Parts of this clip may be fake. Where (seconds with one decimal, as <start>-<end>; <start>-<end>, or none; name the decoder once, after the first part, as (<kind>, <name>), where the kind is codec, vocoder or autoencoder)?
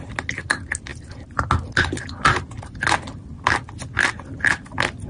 none